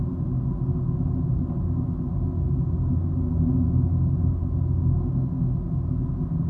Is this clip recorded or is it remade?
recorded